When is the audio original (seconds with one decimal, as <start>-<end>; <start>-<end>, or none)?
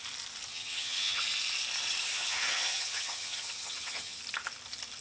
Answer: 0.0-0.5; 1.2-2.1; 4.2-5.0